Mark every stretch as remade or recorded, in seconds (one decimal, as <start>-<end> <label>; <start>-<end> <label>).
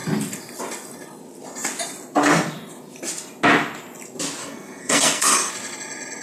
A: 0.0-4.4 recorded; 4.4-5.5 remade; 5.5-6.2 recorded